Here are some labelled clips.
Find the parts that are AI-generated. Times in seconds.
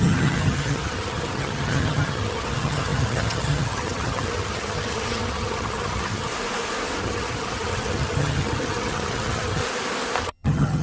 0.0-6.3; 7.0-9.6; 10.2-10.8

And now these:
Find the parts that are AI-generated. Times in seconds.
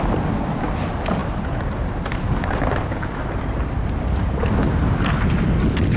none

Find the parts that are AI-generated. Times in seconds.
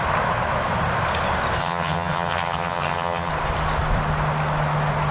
1.6-3.3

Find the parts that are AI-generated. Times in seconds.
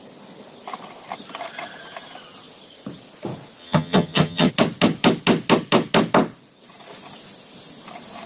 3.6-4.5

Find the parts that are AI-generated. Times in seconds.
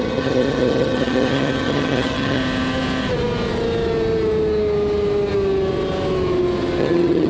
0.0-2.4; 6.8-7.3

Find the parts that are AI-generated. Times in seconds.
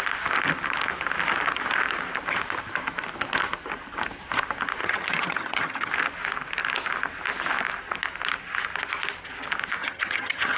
4.8-5.9; 9.8-10.6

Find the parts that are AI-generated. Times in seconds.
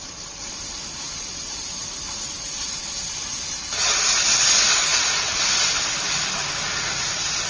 none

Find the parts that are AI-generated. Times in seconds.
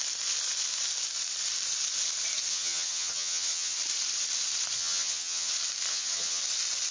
2.5-3.8; 4.8-5.5; 5.9-6.4